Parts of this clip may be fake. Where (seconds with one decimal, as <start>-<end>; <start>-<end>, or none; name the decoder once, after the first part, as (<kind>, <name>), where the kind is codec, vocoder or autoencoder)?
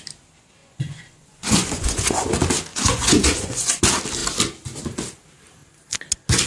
0.6-2.3 (vocoder, Vocos); 2.7-3.8